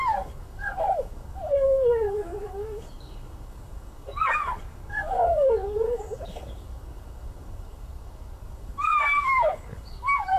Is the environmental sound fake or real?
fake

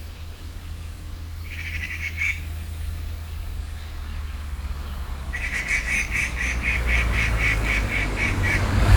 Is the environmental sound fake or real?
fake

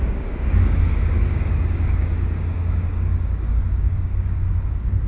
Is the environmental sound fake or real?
fake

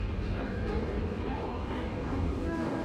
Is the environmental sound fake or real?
fake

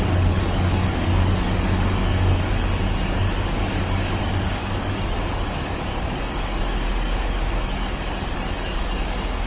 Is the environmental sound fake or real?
fake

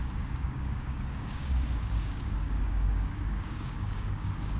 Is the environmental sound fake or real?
fake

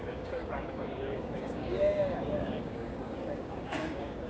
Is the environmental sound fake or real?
fake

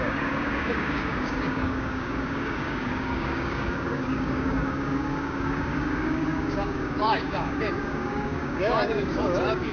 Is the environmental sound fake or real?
fake